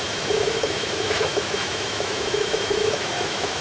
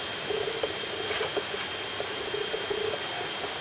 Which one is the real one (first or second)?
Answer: second